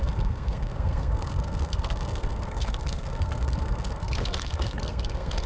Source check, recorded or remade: remade